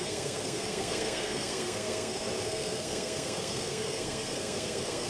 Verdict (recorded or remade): remade